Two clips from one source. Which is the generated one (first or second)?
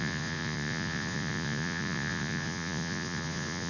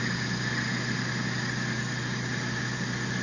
first